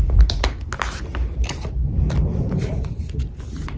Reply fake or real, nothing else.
real